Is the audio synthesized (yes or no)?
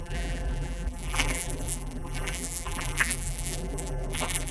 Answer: yes